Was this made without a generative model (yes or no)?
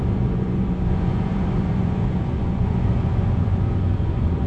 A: no